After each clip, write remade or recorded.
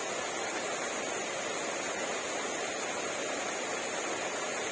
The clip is recorded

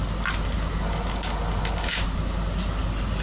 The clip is recorded